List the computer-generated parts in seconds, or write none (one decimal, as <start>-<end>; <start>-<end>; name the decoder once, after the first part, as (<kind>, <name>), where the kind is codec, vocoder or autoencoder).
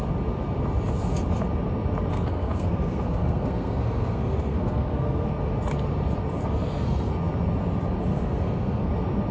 2.1-5.3 (codec, SNAC); 6.4-7.1; 8.1-8.9